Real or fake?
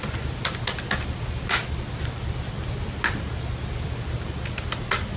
real